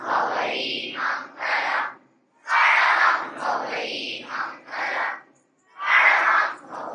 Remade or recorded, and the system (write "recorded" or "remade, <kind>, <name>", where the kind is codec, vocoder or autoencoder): remade, vocoder, BigVGAN v2